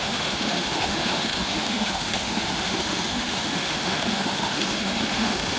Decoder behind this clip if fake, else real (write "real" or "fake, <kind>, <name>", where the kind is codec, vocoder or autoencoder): fake, autoencoder, DAC-VAE